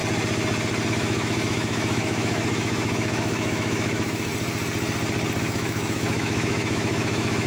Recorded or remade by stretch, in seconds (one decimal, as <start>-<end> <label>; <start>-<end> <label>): 0.0-0.9 recorded; 0.9-4.3 remade; 4.3-5.4 recorded; 5.4-7.5 remade